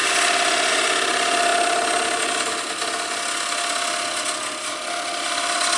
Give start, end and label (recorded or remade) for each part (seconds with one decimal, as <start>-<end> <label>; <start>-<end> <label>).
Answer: 0.0-5.8 recorded